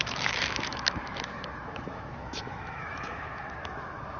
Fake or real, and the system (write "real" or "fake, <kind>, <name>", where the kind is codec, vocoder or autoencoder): fake, autoencoder, DAC-VAE